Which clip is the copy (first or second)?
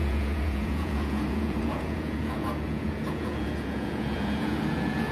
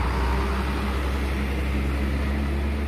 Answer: first